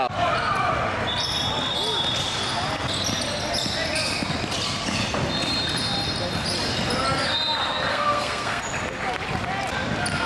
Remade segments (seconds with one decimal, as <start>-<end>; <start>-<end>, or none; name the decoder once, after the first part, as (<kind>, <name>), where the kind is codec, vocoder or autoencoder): 7.9-8.6 (codec, SNAC)